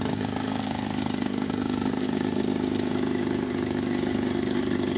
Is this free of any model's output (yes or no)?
no